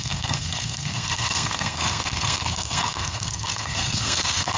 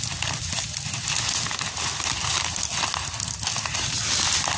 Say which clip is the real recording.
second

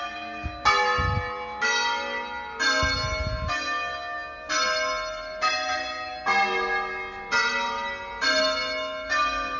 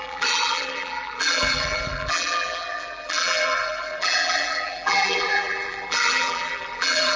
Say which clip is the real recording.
first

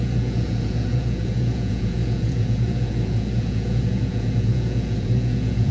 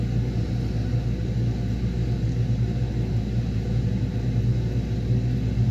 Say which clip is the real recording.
second